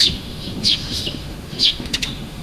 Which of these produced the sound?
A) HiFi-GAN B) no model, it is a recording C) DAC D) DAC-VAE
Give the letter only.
D